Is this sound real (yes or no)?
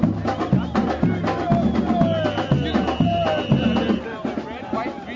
yes